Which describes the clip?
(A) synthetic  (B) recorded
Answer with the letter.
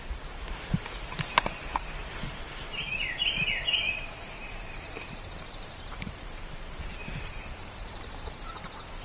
A